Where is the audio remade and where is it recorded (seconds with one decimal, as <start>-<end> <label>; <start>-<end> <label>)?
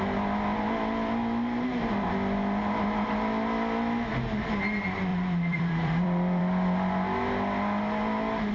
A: 0.0-5.1 recorded; 5.1-6.4 remade; 6.4-8.5 recorded